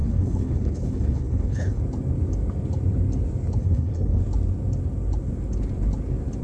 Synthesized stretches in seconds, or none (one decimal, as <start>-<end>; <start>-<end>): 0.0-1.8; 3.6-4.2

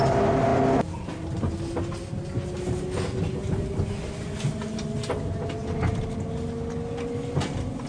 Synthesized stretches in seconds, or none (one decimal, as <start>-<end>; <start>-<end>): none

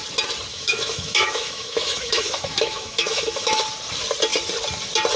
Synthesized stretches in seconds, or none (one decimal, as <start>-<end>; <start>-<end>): 0.5-3.6

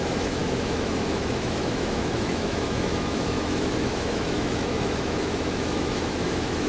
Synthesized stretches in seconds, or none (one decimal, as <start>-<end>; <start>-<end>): 0.0-6.7

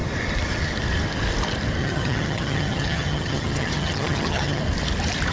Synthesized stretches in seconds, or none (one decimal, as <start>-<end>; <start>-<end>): 1.8-4.6

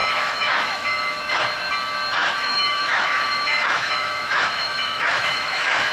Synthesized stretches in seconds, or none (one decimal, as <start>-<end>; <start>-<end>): 0.0-1.4; 2.2-5.9

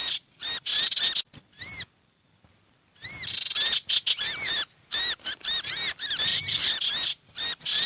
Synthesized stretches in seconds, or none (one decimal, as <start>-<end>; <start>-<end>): 0.0-0.6; 6.3-7.9